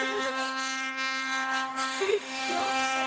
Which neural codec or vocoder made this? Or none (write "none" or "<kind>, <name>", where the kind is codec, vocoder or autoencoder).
autoencoder, DAC-VAE